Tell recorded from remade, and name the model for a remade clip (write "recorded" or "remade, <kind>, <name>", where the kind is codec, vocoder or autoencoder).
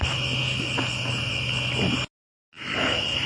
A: recorded